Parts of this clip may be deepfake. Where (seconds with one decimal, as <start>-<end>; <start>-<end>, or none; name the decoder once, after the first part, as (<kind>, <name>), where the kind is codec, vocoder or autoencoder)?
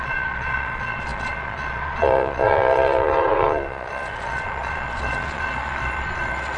0.0-6.6 (vocoder, Vocos)